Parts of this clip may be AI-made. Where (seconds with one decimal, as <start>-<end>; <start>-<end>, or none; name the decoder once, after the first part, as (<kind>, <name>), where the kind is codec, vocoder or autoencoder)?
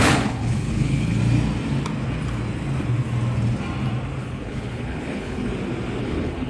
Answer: 0.0-1.2 (codec, HILCodec); 4.2-5.5; 6.0-6.5